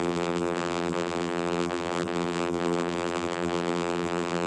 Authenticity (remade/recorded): remade